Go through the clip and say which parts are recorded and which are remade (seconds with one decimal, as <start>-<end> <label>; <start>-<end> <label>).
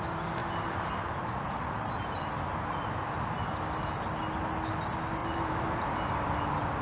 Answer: 0.0-0.4 recorded; 0.4-3.1 remade; 3.1-5.2 recorded; 5.2-5.9 remade; 5.9-6.8 recorded